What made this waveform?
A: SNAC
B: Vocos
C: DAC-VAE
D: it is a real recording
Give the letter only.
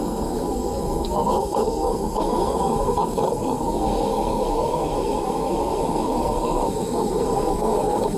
A